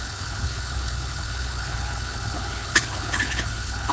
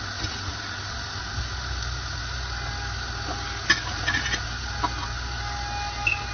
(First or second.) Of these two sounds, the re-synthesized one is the first